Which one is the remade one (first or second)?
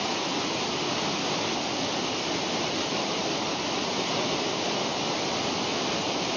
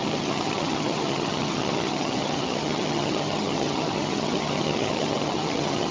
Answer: second